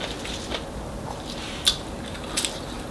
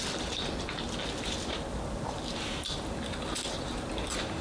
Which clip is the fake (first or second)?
second